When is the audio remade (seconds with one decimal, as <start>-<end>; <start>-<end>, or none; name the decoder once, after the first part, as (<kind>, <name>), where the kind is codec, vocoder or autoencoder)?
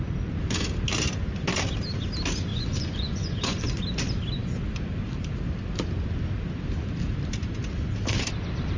2.5-3.8 (vocoder, Vocos)